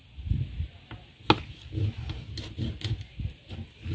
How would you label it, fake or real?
real